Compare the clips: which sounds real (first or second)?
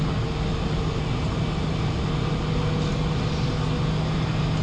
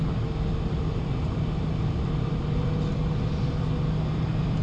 first